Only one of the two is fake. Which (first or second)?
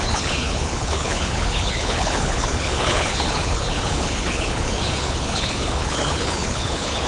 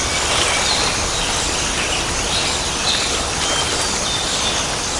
first